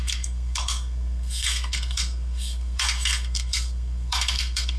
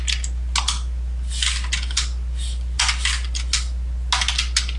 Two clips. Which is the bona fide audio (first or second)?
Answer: second